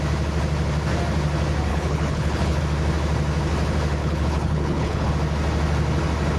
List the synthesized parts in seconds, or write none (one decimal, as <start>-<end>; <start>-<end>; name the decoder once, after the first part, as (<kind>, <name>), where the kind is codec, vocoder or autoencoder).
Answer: 1.7-2.6 (codec, HILCodec); 4.0-5.1